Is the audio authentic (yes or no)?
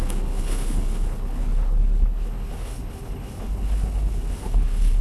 no